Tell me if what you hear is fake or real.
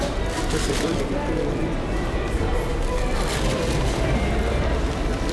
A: fake